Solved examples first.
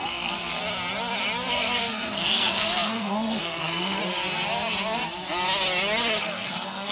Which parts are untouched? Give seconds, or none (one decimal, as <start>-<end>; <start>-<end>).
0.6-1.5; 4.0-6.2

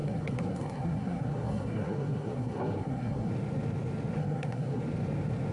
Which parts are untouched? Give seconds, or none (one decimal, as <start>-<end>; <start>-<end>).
3.3-4.2; 4.8-5.5

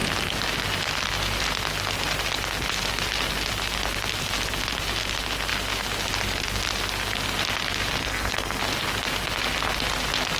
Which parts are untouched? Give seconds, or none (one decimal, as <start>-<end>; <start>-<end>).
0.0-8.0; 8.6-10.4

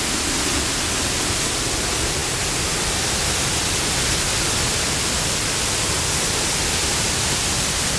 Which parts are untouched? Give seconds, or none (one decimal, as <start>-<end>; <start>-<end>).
0.0-8.0